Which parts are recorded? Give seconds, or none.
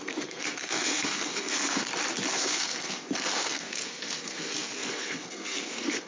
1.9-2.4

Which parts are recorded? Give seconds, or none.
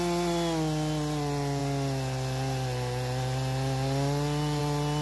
0.0-5.0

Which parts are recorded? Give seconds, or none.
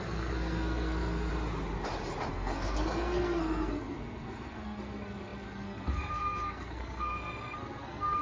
1.3-2.3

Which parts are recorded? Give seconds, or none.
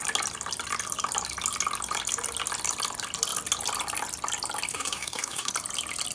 0.0-4.7; 5.5-6.1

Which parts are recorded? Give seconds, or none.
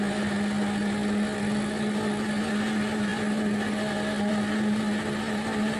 0.0-5.8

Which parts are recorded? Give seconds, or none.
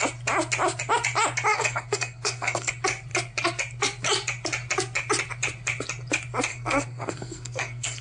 0.0-1.5; 2.7-6.5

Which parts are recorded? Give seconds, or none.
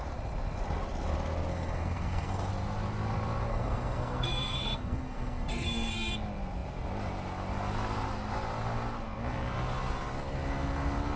0.0-1.5; 2.5-3.5; 6.1-11.2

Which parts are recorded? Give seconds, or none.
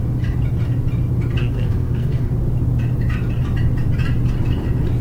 0.0-1.4; 2.3-5.0